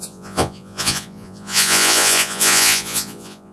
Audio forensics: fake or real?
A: fake